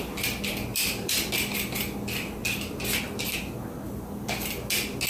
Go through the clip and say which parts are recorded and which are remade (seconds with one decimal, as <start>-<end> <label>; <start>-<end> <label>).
0.0-0.7 recorded; 0.7-1.3 remade; 1.3-2.4 recorded; 2.4-3.0 remade; 3.0-5.1 recorded